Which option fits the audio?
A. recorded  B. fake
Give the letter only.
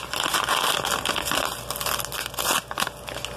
A